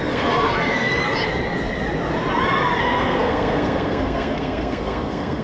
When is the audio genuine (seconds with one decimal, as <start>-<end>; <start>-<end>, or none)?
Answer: 1.0-2.8